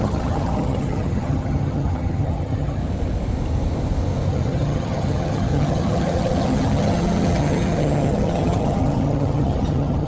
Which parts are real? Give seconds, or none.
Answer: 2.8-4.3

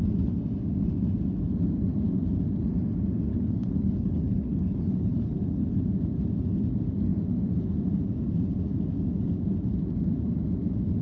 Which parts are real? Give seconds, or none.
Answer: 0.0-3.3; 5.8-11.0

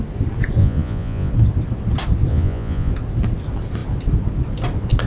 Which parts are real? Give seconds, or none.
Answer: 0.0-0.6; 1.3-2.3; 2.9-5.1